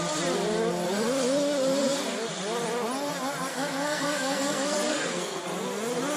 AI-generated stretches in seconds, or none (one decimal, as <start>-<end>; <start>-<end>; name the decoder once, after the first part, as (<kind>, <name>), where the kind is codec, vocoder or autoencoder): 3.5-5.4 (codec, SNAC)